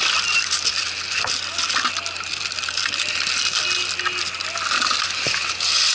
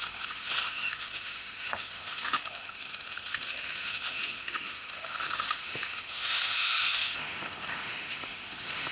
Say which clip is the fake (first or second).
second